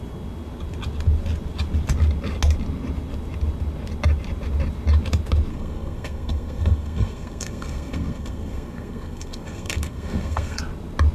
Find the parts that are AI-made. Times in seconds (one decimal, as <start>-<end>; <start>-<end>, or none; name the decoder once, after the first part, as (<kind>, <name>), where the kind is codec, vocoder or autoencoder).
5.5-10.6 (codec, SNAC)